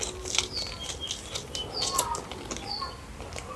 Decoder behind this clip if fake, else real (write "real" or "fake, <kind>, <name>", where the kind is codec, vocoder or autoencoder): real